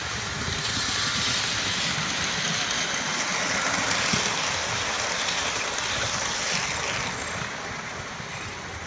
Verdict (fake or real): real